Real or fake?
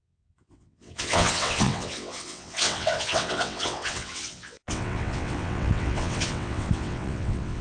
fake